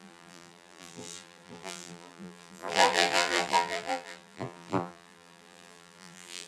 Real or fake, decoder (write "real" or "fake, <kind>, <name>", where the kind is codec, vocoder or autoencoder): fake, vocoder, BigVGAN v2